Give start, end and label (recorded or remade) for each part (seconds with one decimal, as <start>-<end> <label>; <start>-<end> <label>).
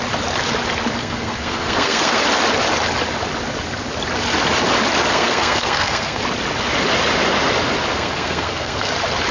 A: 0.0-1.0 recorded; 1.0-2.2 remade; 2.2-5.1 recorded; 5.1-6.2 remade; 6.2-7.9 recorded; 7.9-8.9 remade; 8.9-9.3 recorded